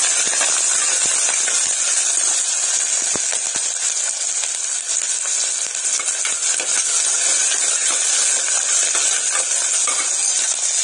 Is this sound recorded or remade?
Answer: recorded